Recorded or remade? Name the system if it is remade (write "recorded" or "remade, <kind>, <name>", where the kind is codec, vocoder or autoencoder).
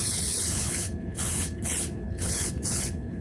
remade, codec, HILCodec